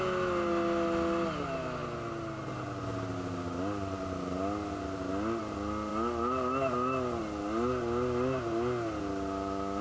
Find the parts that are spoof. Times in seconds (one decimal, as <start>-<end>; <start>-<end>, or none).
none